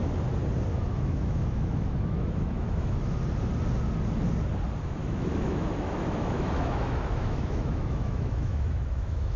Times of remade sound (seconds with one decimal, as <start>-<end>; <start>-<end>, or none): 0.7-3.2; 5.0-9.4